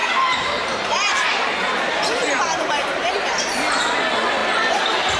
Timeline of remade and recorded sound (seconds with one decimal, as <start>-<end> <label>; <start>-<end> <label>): 0.0-3.1 remade; 3.1-5.2 recorded